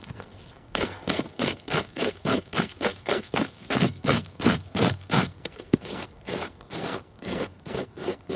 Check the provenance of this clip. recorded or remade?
remade